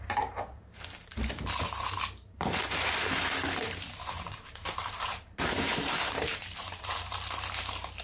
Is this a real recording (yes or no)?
no